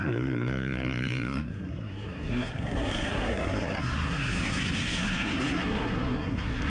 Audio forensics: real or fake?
fake